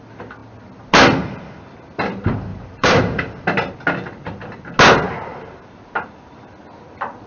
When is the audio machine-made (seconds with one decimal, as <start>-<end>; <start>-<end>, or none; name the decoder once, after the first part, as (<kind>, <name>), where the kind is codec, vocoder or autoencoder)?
2.5-3.0 (vocoder, BigVGAN v2)